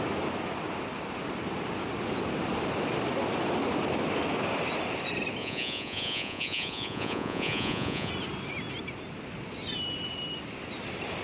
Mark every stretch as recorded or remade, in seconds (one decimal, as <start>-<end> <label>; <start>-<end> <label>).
0.0-5.4 recorded; 5.4-8.1 remade; 8.1-11.2 recorded